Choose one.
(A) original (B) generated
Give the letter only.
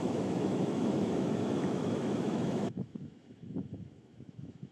B